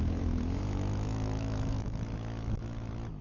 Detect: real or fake fake